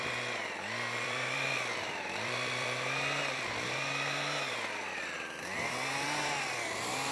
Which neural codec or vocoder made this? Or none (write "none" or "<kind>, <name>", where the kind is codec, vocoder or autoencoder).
vocoder, BigVGAN v2